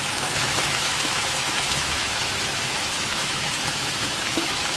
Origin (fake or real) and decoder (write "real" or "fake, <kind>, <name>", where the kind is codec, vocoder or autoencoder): fake, autoencoder, DAC-VAE